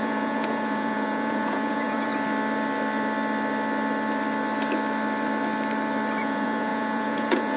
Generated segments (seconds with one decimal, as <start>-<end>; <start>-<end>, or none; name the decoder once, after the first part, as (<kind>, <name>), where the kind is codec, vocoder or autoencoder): 0.0-2.1 (vocoder, Vocos); 6.2-7.6